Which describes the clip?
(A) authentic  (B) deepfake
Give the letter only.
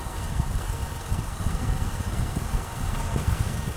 B